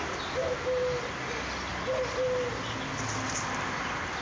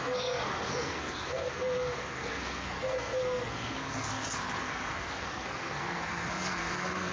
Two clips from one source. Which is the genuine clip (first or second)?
first